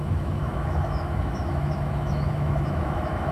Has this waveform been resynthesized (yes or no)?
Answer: yes